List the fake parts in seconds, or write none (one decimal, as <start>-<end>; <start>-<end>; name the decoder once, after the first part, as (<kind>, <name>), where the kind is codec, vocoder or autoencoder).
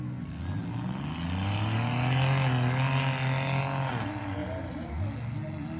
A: 4.4-5.0 (vocoder, BigVGAN v2)